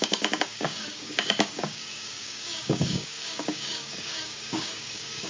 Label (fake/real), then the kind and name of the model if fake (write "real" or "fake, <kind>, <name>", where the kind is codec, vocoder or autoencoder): fake, codec, DAC